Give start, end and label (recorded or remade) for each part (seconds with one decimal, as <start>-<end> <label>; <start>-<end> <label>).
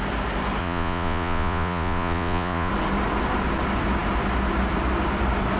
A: 0.0-0.6 recorded; 0.6-2.7 remade; 2.7-5.6 recorded